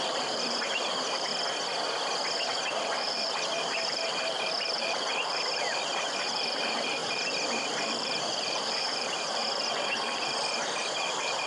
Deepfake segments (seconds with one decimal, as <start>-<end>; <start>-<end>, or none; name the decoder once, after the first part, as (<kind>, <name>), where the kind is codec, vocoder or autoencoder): 0.0-1.3 (vocoder, BigVGAN v2); 2.7-11.5